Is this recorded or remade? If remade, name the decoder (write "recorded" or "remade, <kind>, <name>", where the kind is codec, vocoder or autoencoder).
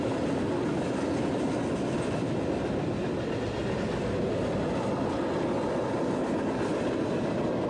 recorded